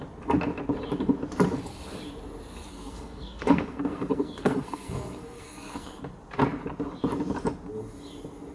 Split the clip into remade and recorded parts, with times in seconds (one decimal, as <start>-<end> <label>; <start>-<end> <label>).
0.0-2.7 recorded; 2.7-6.0 remade; 6.0-8.5 recorded